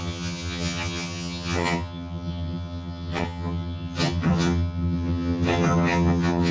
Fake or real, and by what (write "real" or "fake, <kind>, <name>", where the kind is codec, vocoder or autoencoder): fake, vocoder, HiFi-GAN